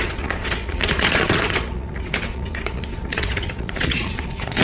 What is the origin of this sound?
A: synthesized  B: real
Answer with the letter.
A